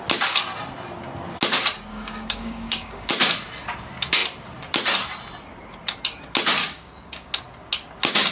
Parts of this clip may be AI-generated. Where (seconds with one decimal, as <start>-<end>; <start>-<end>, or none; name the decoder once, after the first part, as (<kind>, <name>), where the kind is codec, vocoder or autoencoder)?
1.9-3.1 (codec, DAC); 6.6-7.3